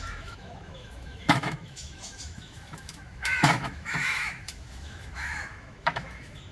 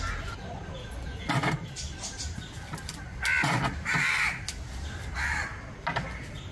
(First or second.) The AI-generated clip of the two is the first